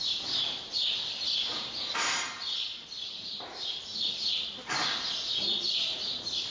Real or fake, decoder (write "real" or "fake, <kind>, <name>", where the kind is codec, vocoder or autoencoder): real